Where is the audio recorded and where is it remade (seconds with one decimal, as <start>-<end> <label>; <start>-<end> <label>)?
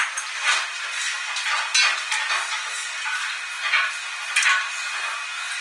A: 0.0-5.6 recorded